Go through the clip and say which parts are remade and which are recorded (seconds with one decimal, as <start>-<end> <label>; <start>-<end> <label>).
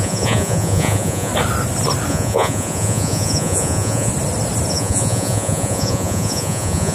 0.0-1.3 remade; 1.3-2.1 recorded; 2.1-4.1 remade; 4.1-4.7 recorded; 4.7-6.9 remade